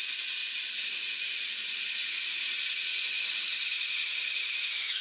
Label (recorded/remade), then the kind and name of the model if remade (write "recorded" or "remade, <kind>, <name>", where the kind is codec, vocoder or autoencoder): recorded